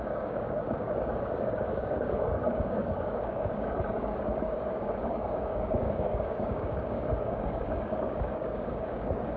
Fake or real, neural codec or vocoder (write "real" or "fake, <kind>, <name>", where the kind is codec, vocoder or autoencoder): fake, codec, DAC